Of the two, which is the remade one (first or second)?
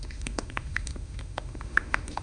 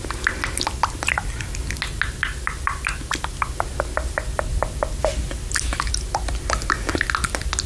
first